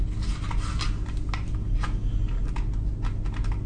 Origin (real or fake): real